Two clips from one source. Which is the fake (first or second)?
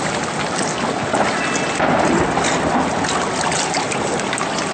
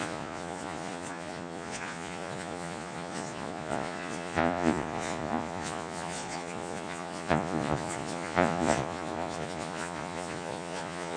second